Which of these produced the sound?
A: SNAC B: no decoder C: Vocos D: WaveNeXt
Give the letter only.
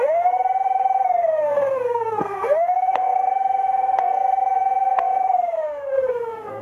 A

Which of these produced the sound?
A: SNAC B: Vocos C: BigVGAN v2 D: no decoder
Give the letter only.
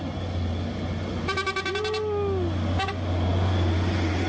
D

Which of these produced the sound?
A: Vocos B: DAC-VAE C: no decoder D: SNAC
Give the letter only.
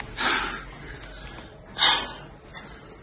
C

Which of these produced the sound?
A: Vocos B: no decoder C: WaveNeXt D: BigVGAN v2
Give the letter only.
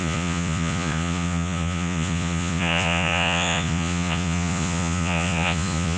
A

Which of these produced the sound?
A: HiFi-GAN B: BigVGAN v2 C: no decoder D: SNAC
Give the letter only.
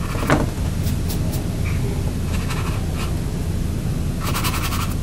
C